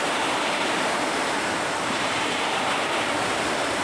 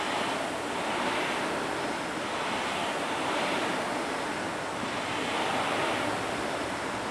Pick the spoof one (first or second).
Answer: first